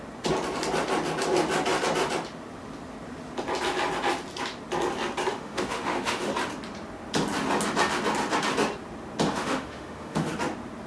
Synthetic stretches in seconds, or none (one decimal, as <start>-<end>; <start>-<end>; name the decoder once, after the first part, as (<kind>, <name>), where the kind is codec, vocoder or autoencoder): 5.3-6.3 (autoencoder, DAC-VAE); 9.3-10.3